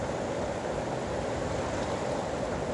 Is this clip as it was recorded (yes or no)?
yes